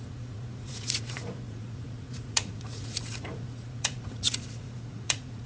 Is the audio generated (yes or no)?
yes